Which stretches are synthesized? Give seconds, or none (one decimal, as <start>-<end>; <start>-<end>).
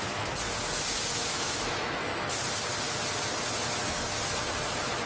1.3-2.3